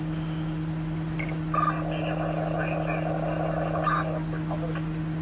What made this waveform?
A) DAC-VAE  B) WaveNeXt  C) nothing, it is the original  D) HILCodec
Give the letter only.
C